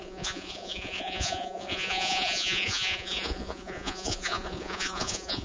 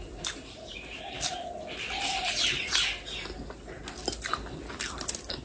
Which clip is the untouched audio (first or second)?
second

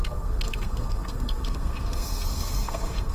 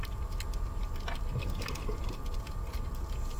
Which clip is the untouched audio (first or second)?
second